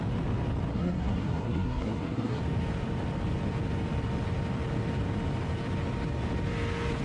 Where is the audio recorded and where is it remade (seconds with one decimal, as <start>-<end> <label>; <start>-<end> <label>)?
0.0-0.7 recorded; 0.7-2.4 remade; 2.4-7.0 recorded